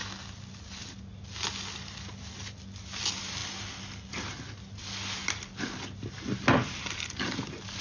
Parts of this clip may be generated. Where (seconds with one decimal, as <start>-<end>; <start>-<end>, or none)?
none